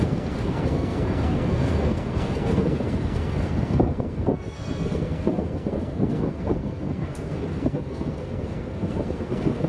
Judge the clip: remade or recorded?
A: remade